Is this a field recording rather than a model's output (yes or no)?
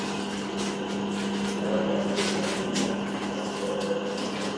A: yes